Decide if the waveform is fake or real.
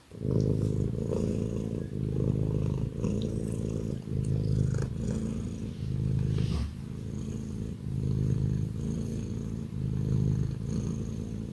real